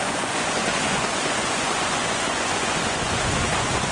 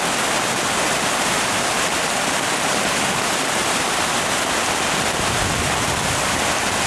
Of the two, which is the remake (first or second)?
first